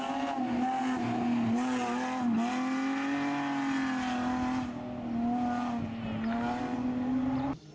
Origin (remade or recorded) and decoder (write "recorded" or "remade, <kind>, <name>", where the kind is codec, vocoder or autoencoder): recorded